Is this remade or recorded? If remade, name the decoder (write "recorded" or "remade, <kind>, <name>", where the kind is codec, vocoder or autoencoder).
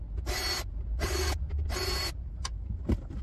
recorded